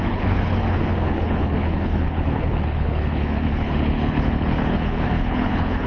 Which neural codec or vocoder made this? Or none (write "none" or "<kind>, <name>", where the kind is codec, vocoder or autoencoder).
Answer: codec, HILCodec